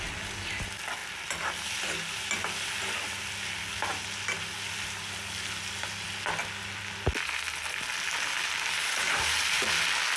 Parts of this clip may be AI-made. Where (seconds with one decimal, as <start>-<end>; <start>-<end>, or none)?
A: none